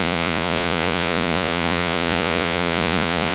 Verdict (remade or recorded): remade